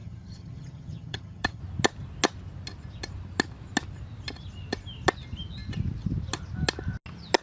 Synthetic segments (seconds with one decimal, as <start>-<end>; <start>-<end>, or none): 0.0-1.6